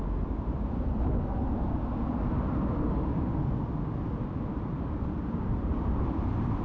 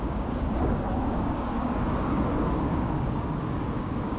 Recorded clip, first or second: first